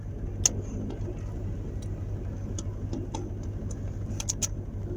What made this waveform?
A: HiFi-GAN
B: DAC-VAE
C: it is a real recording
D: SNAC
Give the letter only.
C